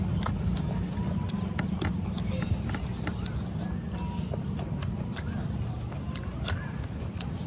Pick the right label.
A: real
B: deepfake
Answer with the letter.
A